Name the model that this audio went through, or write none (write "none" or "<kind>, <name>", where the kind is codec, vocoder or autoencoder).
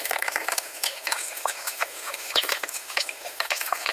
autoencoder, DAC-VAE